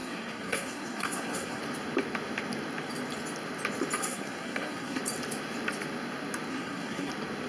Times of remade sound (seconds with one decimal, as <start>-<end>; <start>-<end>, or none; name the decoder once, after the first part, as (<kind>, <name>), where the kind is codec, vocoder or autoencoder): 0.0-1.6 (codec, SNAC); 4.0-5.0; 6.5-7.1